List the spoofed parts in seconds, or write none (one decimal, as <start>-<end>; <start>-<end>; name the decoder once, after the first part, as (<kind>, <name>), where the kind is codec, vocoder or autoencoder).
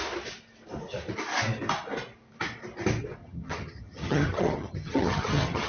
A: 3.2-5.7 (vocoder, HiFi-GAN)